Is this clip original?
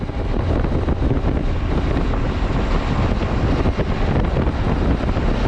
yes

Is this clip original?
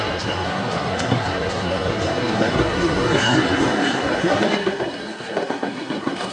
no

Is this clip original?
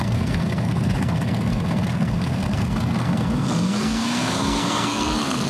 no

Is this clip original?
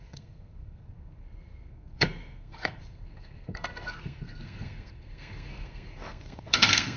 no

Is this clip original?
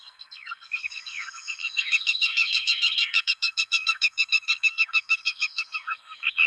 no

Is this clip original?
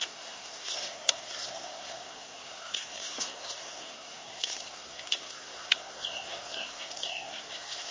no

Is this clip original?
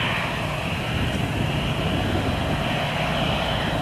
yes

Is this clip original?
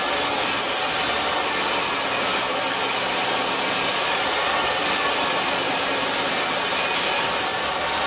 yes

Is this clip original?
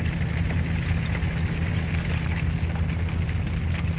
yes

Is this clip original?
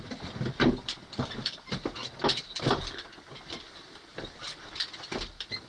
yes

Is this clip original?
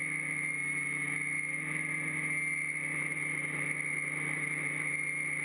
yes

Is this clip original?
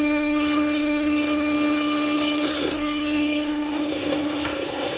no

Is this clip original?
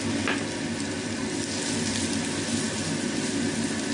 yes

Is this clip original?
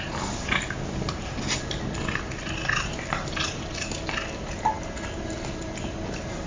yes